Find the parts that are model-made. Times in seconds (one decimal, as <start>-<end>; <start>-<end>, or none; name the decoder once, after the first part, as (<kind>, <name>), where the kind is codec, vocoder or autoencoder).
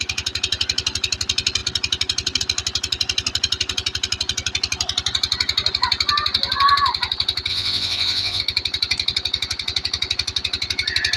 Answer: 7.5-8.4 (vocoder, Vocos)